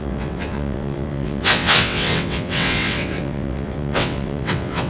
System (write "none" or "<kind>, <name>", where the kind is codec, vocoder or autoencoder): vocoder, WaveNeXt